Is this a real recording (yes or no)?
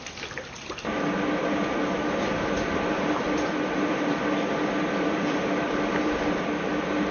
no